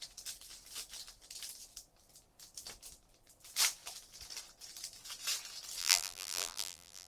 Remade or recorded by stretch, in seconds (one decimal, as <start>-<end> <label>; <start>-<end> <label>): 0.0-5.8 recorded; 5.8-7.1 remade